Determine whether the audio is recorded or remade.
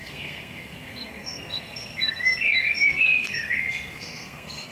remade